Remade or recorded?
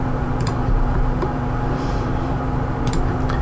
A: remade